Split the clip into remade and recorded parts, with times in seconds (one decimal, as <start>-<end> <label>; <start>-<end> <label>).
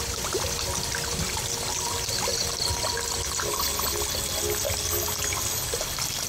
0.0-1.1 remade; 1.1-1.7 recorded; 1.7-2.3 remade; 2.3-6.3 recorded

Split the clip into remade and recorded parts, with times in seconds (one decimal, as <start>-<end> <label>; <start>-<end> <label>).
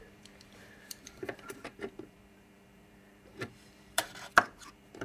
0.0-5.0 remade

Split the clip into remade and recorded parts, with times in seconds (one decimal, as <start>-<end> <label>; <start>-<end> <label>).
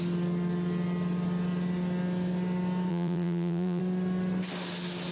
0.0-2.9 recorded; 2.9-3.8 remade; 3.8-5.1 recorded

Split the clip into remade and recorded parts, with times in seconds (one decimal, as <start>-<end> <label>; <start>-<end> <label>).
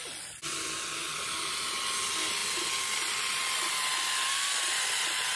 0.0-1.0 recorded; 1.0-1.8 remade; 1.8-5.4 recorded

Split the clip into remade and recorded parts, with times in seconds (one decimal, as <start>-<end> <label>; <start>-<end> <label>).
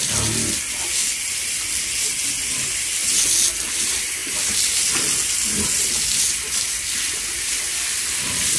0.0-8.6 recorded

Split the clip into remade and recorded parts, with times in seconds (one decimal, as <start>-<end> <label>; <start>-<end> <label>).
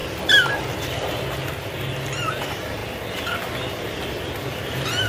0.0-2.8 remade; 2.8-3.5 recorded; 3.5-5.1 remade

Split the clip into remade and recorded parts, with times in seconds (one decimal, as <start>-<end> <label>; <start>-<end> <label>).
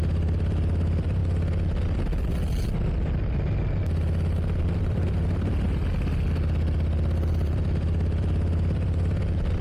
0.0-1.2 remade; 1.2-4.6 recorded; 4.6-5.8 remade; 5.8-7.3 recorded; 7.3-9.6 remade